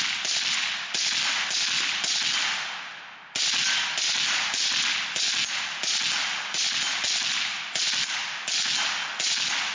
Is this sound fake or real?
real